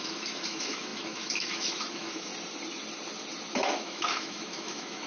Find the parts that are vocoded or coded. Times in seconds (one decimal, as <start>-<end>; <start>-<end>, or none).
0.0-2.3; 3.7-5.1